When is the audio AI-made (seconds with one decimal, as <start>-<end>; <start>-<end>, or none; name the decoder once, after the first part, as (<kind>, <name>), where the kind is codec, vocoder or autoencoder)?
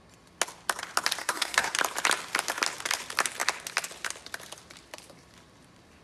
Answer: 1.2-1.7 (codec, SNAC)